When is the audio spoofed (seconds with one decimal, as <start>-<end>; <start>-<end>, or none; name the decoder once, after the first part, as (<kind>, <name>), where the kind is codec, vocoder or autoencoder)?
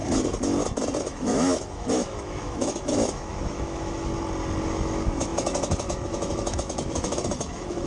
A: 1.0-4.1 (autoencoder, DAC-VAE); 4.6-7.9